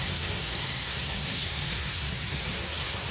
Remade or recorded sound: remade